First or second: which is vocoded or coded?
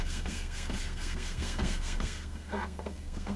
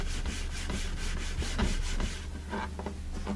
first